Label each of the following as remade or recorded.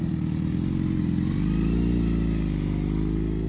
recorded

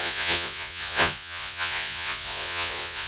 remade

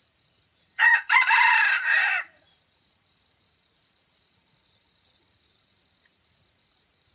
remade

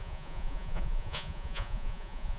remade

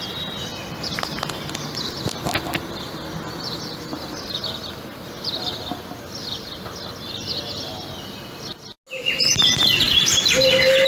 recorded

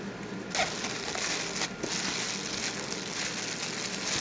recorded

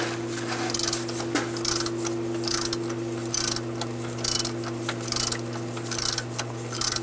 recorded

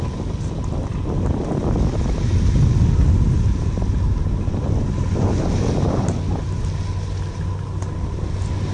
recorded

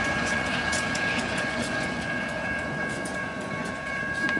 remade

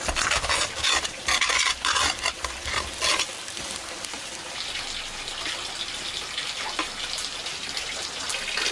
recorded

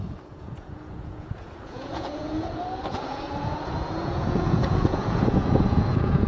remade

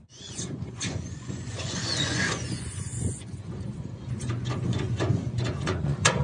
remade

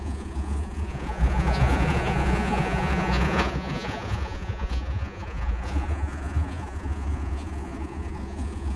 remade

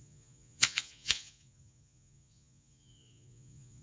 remade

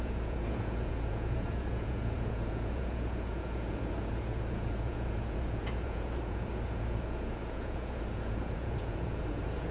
remade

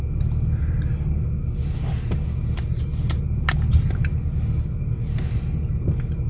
recorded